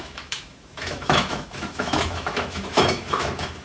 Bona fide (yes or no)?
no